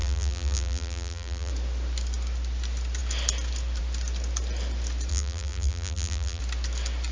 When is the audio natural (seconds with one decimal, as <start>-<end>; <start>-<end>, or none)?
1.5-5.1; 6.4-7.1